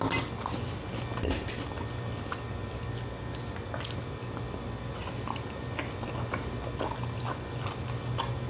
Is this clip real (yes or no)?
yes